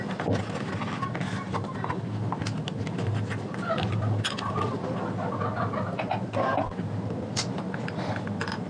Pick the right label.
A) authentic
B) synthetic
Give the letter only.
A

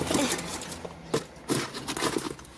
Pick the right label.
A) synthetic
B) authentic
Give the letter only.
B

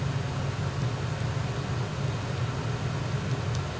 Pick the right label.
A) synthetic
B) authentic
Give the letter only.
B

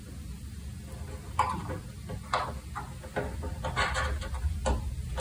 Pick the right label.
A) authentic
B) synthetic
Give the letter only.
A